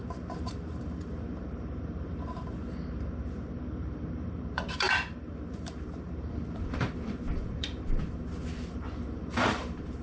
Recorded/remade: remade